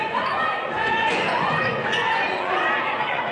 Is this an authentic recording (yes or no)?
no